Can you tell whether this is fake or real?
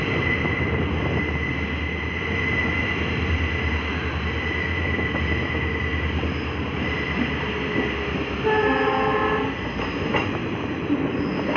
real